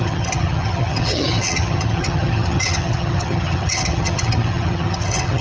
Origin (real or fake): fake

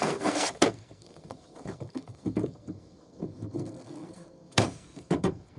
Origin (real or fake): fake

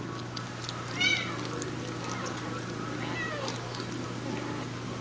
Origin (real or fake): real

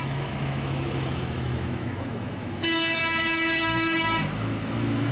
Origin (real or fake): fake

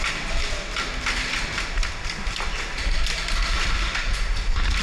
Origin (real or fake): real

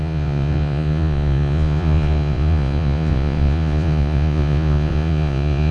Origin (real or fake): fake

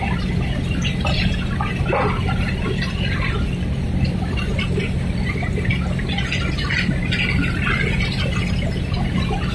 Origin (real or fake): real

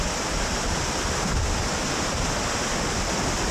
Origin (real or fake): real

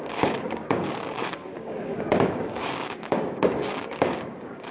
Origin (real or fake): fake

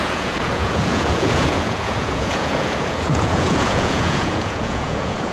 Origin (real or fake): fake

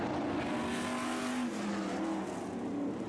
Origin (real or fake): real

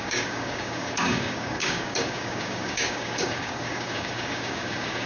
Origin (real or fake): fake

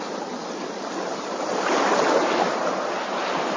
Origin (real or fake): real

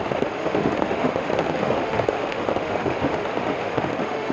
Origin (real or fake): fake